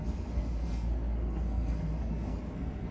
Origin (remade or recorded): remade